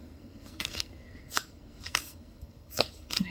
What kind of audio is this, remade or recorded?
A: remade